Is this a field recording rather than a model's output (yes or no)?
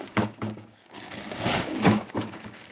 no